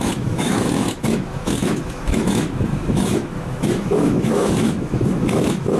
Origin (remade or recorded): remade